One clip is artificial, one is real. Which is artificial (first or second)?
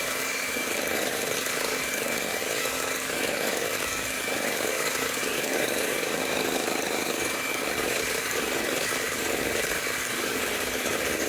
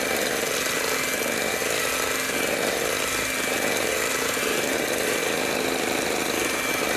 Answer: first